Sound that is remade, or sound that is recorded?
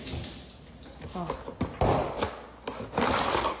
recorded